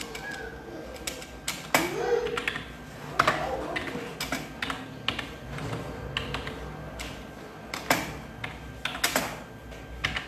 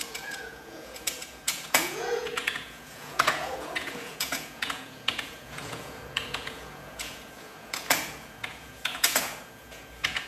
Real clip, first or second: first